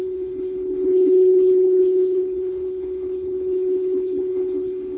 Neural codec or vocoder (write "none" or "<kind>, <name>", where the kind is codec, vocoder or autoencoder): codec, HILCodec